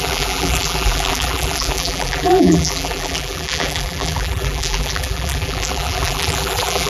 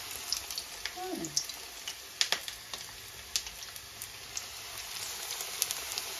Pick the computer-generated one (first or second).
first